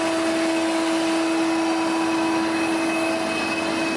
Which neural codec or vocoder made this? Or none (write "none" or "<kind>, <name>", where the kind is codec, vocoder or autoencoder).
none